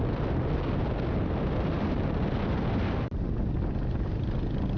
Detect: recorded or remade recorded